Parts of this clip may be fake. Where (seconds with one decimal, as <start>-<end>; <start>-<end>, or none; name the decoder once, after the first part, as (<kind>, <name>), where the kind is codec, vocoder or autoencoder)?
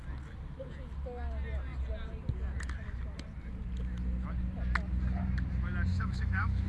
5.9-6.7 (autoencoder, DAC-VAE)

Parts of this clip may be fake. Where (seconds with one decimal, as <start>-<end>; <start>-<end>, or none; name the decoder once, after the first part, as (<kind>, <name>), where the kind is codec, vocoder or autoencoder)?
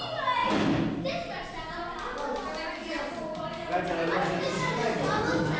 none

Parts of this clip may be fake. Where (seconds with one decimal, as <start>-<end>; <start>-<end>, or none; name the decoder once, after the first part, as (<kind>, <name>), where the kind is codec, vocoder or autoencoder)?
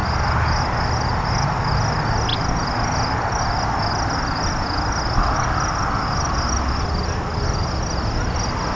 none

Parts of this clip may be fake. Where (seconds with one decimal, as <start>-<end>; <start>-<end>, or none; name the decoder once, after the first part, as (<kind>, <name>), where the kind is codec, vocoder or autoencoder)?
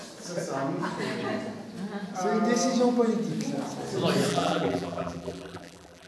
4.3-6.1 (vocoder, BigVGAN v2)